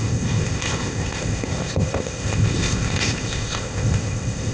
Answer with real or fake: fake